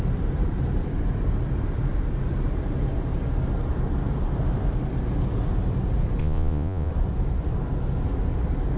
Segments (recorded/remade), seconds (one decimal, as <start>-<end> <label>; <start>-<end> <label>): 0.0-6.2 recorded; 6.2-6.9 remade; 6.9-8.8 recorded